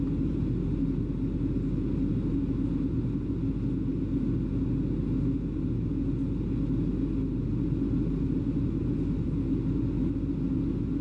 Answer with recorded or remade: recorded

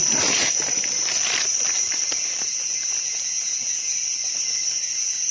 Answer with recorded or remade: recorded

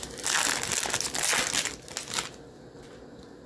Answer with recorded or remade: recorded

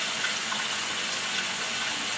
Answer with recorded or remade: remade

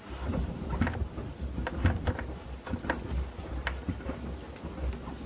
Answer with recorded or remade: recorded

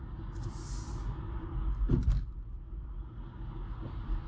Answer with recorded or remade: recorded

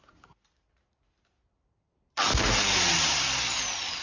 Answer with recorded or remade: recorded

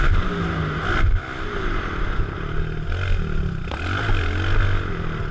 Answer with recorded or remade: recorded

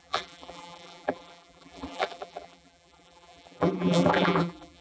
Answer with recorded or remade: remade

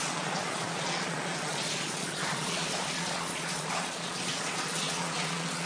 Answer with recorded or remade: remade